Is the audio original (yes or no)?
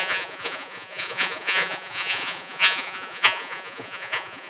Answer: no